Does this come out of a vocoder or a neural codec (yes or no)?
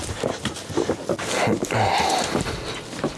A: no